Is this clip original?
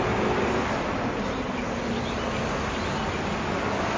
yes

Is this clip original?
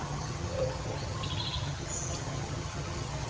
no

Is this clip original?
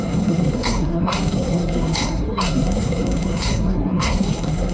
no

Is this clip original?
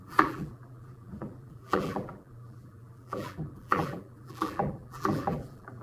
no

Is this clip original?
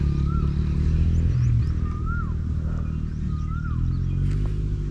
yes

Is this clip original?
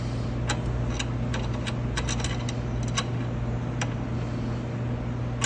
yes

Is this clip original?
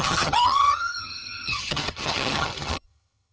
no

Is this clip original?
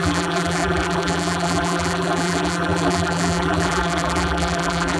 no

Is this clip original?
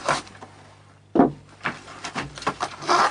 yes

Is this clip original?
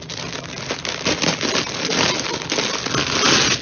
yes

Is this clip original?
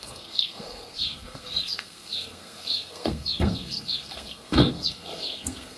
no